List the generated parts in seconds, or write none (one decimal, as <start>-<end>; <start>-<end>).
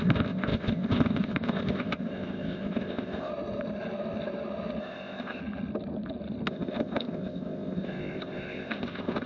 0.0-3.3; 4.8-5.4; 6.5-9.3